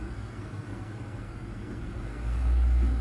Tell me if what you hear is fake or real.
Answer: fake